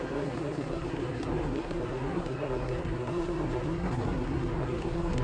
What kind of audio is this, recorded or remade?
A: remade